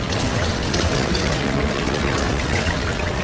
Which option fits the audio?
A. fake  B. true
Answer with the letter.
A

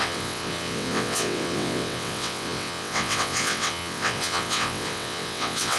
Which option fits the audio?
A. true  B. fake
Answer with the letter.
B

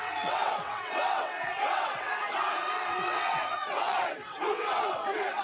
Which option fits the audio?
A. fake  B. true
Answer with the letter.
A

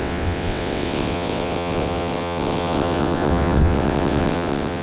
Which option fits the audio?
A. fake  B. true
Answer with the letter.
A